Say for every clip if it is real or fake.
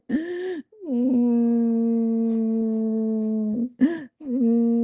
real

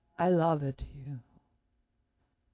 fake